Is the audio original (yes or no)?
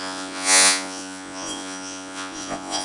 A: no